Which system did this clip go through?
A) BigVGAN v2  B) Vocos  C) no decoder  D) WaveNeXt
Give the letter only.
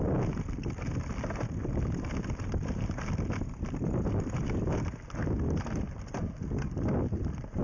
C